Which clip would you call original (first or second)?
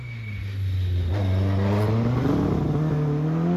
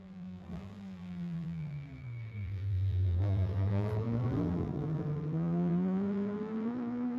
first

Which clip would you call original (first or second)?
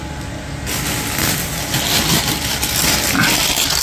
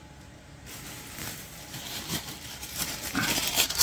first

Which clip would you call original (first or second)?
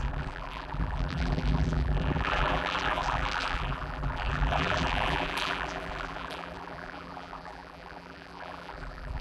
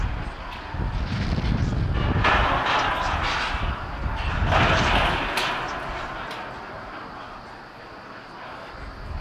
second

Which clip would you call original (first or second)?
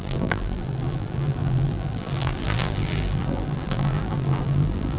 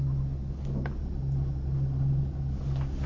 second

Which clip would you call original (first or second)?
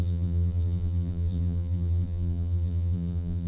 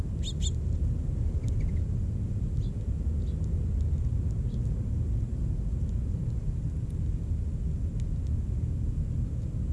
second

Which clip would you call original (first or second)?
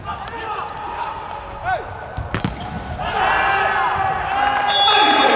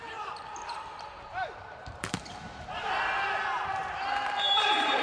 first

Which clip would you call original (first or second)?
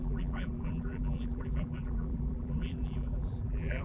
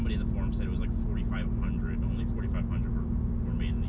second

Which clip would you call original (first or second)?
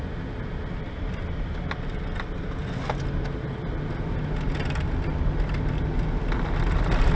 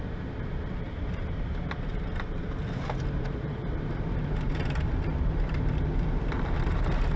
first